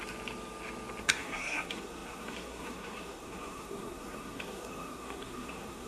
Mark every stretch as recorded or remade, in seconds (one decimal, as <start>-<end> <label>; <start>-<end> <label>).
0.0-1.0 recorded; 1.0-5.9 remade